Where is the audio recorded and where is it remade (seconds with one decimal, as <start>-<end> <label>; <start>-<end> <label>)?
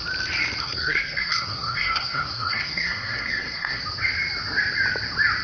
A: 0.0-0.6 recorded; 0.6-3.8 remade; 3.8-5.4 recorded